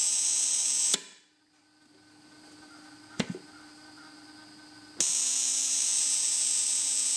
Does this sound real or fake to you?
real